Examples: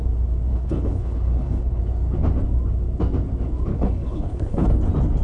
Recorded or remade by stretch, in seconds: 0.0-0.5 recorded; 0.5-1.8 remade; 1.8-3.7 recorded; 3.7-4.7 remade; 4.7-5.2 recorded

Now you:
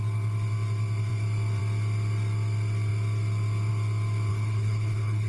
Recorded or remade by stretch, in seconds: 0.0-4.3 recorded; 4.3-5.3 remade